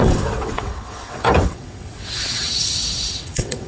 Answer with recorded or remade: remade